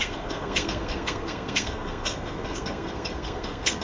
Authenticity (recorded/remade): remade